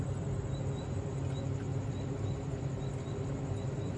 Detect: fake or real real